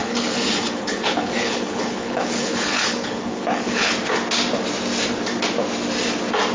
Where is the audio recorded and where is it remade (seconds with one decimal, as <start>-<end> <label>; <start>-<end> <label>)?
0.0-3.9 remade; 3.9-6.5 recorded